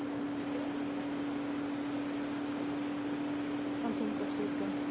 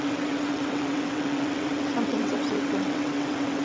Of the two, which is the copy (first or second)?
second